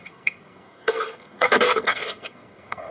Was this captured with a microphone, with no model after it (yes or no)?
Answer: no